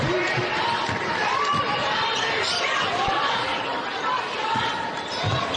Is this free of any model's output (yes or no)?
yes